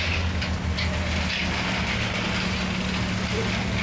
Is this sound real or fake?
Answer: real